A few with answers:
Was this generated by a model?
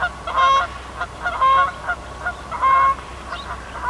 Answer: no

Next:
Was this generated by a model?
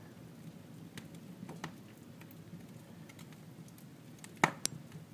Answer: no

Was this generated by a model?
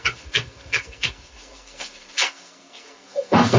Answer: yes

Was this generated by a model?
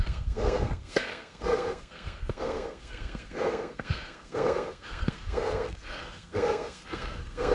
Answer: yes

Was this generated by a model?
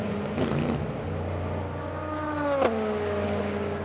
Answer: no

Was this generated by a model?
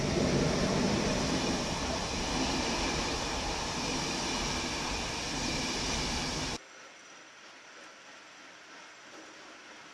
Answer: no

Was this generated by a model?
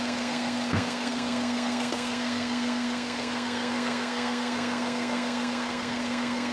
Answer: yes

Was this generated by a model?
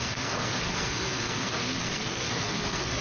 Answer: yes